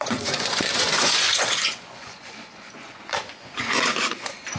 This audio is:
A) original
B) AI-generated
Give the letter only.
B